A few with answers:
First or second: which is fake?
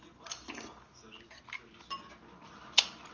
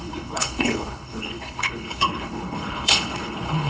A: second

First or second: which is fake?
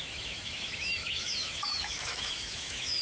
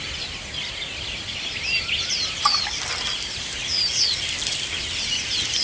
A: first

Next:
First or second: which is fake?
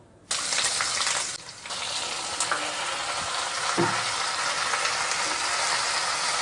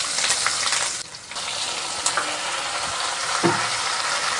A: second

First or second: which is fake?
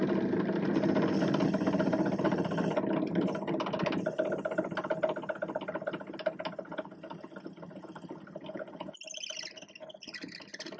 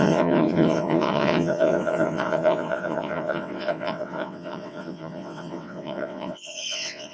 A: second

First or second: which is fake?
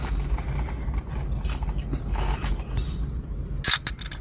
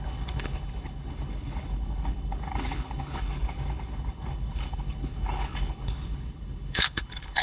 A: second